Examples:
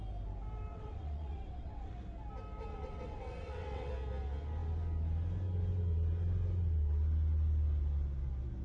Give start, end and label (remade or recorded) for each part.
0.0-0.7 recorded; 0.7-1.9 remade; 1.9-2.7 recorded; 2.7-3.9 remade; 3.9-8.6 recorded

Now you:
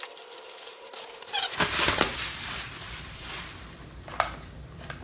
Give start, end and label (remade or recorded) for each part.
0.0-0.7 recorded; 0.7-3.4 remade; 3.4-5.0 recorded

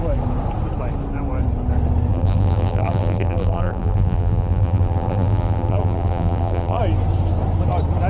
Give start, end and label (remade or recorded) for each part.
0.0-2.1 recorded; 2.1-6.8 remade; 6.8-8.1 recorded

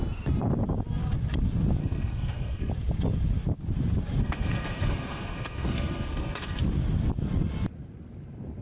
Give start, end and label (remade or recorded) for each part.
0.0-1.8 recorded; 1.8-2.7 remade; 2.7-4.2 recorded; 4.2-6.6 remade; 6.6-8.6 recorded

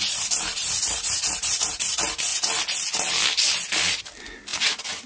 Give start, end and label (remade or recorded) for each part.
0.0-2.3 remade; 2.3-4.0 recorded; 4.0-5.1 remade

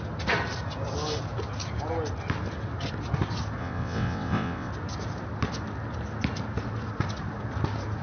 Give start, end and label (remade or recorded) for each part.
0.0-3.6 recorded; 3.6-4.7 remade; 4.7-8.0 recorded

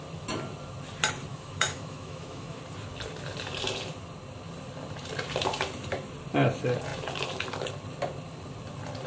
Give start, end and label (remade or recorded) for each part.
0.0-1.3 recorded; 1.3-2.6 remade; 2.6-9.1 recorded

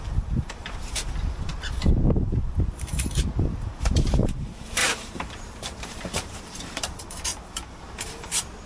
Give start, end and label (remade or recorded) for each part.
0.0-7.3 remade; 7.3-7.8 recorded; 7.8-8.7 remade